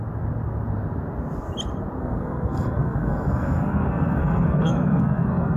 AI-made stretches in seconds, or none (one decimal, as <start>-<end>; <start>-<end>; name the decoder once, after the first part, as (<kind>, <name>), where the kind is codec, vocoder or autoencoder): 2.0-5.6 (codec, SNAC)